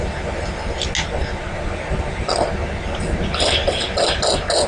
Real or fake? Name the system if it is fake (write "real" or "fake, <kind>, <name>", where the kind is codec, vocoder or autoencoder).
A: real